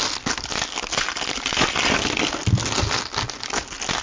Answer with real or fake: real